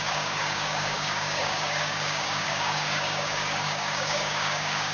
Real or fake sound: fake